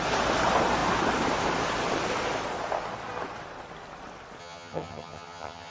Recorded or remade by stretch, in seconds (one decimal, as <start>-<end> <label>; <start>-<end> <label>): 0.0-4.4 recorded; 4.4-5.7 remade